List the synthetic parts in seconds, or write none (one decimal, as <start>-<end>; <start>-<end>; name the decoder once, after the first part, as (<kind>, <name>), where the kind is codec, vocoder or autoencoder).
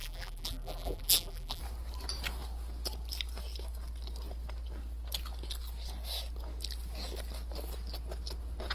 0.0-1.6 (vocoder, BigVGAN v2)